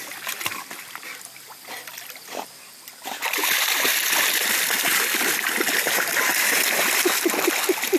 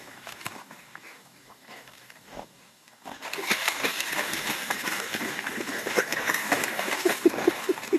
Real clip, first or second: first